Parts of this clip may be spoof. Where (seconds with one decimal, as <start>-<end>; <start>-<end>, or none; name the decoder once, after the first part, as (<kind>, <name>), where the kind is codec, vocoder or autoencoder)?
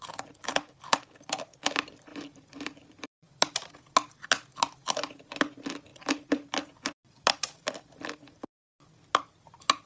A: 2.1-3.7 (vocoder, BigVGAN v2); 5.9-8.5